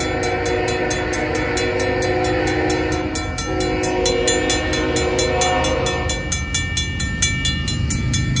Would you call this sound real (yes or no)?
yes